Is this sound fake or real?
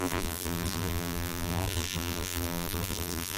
fake